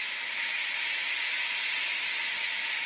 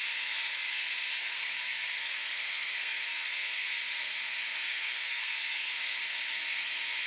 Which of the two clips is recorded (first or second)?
first